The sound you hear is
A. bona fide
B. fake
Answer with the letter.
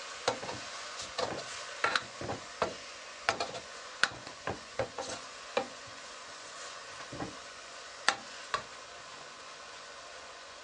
B